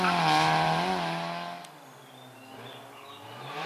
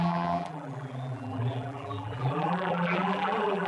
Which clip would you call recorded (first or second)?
first